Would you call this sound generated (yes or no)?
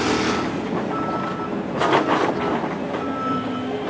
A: no